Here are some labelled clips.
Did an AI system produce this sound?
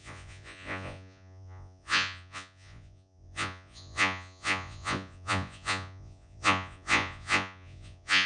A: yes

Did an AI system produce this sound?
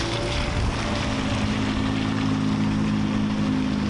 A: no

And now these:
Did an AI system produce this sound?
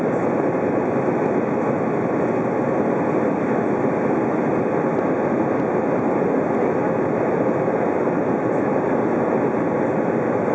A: no